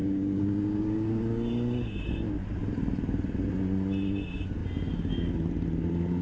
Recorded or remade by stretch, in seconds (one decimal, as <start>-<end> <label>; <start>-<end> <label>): 0.0-1.9 remade; 1.9-6.2 recorded